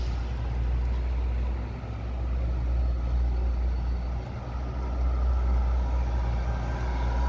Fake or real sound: real